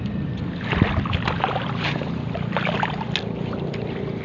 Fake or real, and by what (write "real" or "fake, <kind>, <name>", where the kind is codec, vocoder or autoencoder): real